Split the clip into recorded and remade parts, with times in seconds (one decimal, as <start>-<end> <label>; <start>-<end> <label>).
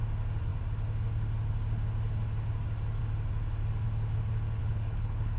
0.0-4.6 recorded; 4.6-5.4 remade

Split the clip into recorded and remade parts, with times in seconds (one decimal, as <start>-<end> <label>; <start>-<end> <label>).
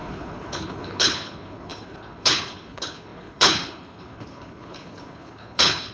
0.0-5.9 remade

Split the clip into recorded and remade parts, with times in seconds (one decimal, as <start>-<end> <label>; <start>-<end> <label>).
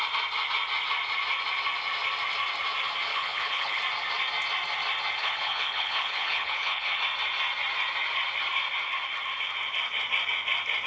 0.0-3.1 recorded; 3.1-3.8 remade; 3.8-5.2 recorded; 5.2-7.0 remade; 7.0-10.9 recorded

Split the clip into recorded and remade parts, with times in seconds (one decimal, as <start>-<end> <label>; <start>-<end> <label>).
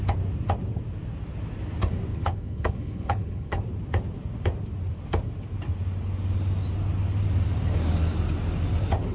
0.0-2.1 recorded; 2.1-3.6 remade; 3.6-9.1 recorded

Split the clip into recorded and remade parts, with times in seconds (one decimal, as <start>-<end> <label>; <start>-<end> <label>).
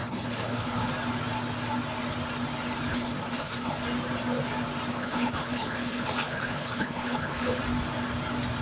0.0-0.9 remade; 0.9-2.9 recorded; 2.9-3.8 remade; 3.8-4.9 recorded; 4.9-7.6 remade; 7.6-8.6 recorded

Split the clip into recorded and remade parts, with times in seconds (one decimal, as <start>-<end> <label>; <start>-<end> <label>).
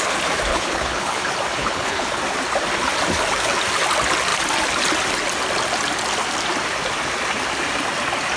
0.0-0.5 recorded; 0.5-1.2 remade; 1.2-1.6 recorded; 1.6-2.2 remade; 2.2-8.4 recorded